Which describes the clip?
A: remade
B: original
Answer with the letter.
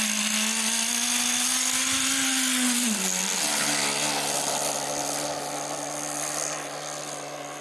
B